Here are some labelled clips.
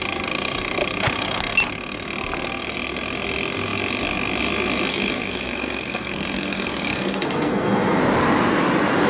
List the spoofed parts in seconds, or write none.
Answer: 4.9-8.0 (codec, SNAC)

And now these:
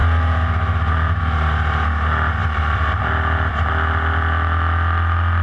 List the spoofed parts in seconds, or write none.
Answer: 2.4-3.7 (vocoder, BigVGAN v2)

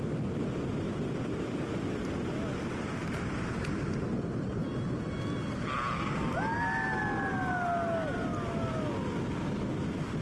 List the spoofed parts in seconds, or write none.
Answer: 3.0-3.8 (vocoder, BigVGAN v2)